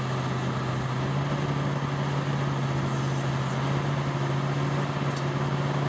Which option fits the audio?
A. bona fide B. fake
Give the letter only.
A